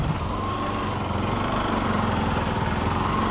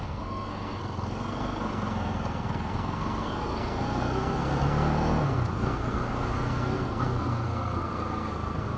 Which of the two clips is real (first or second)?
first